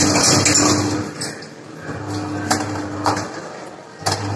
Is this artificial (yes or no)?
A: no